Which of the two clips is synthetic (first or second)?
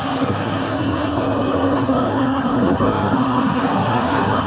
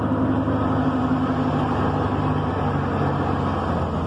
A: first